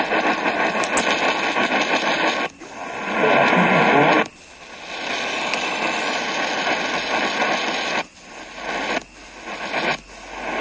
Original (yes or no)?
yes